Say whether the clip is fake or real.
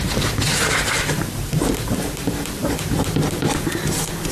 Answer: fake